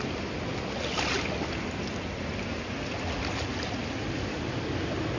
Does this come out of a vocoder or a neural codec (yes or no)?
no